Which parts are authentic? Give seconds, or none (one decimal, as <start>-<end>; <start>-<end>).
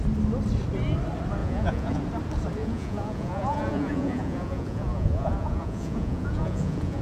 0.0-1.4; 2.0-2.6